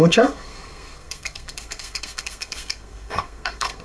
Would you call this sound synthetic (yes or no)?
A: yes